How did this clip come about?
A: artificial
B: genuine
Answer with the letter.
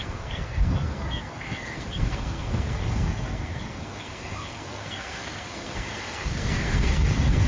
A